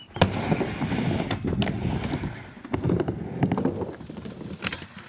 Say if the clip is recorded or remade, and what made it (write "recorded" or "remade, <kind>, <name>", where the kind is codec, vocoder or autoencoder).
recorded